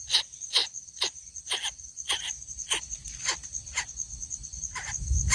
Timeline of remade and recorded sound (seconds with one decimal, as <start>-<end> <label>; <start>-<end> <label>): 0.0-5.3 recorded